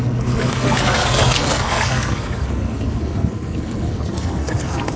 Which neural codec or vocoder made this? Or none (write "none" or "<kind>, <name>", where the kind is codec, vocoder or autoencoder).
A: codec, SNAC